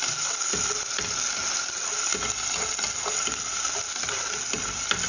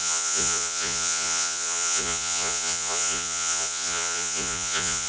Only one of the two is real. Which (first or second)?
first